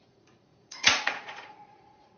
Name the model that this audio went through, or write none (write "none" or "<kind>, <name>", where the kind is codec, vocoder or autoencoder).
vocoder, Vocos